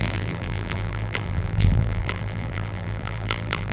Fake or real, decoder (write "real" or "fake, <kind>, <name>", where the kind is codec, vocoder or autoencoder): fake, vocoder, BigVGAN v2